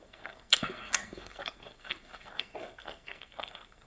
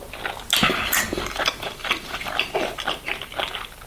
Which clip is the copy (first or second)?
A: first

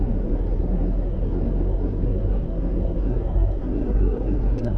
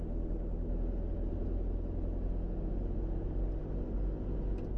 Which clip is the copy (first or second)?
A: first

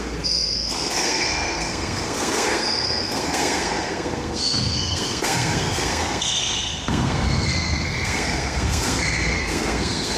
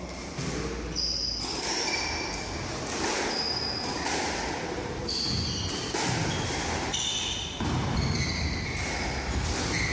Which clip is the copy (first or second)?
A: first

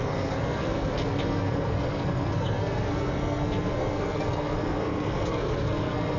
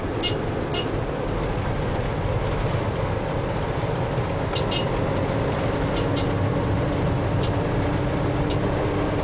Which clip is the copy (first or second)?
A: first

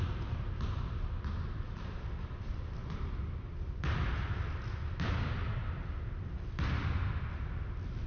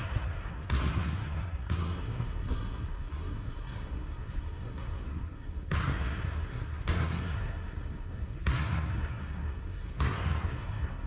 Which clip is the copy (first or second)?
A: second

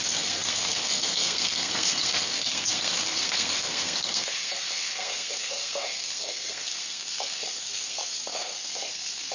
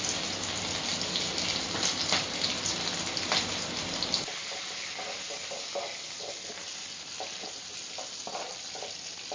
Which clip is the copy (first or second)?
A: first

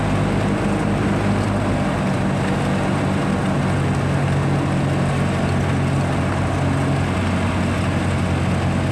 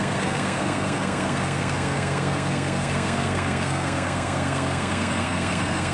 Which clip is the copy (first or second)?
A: second